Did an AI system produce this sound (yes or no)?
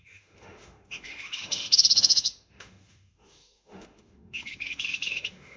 yes